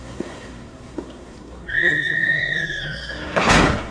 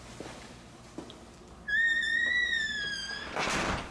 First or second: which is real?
second